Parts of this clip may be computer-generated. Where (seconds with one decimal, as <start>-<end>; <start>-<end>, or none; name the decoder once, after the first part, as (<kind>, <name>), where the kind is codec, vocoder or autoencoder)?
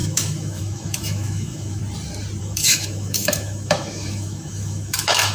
0.0-1.8 (autoencoder, DAC-VAE); 2.4-5.3